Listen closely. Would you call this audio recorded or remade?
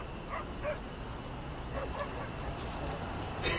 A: recorded